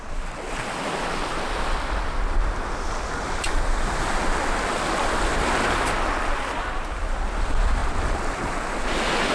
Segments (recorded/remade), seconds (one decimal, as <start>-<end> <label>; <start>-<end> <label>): 0.0-9.3 recorded

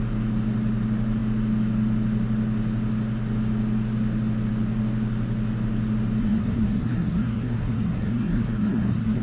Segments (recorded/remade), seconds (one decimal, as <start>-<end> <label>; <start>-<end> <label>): 0.0-6.2 recorded; 6.2-9.2 remade

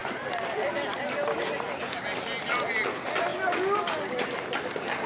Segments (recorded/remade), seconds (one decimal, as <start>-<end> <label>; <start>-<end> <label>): 0.0-5.1 recorded

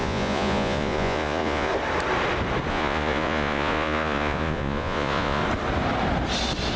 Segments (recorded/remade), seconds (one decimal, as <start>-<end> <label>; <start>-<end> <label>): 0.0-1.7 remade; 1.7-2.7 recorded; 2.7-5.4 remade; 5.4-6.8 recorded

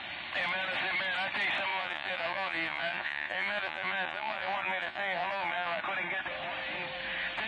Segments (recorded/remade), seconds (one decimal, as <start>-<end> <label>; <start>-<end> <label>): 0.0-1.7 recorded; 1.7-5.8 remade; 5.8-7.5 recorded